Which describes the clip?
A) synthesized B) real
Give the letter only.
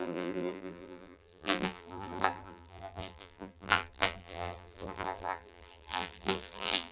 A